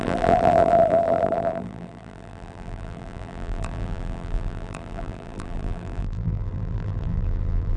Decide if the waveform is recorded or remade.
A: remade